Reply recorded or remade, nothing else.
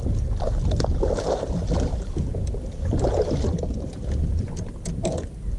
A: recorded